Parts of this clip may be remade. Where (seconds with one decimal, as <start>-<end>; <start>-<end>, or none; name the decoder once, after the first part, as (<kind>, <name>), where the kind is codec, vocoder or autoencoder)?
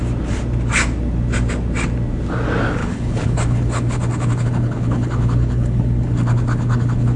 2.8-7.2 (codec, HILCodec)